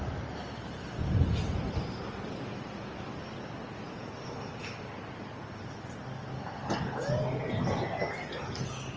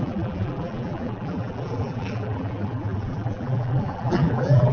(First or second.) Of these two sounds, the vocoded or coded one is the second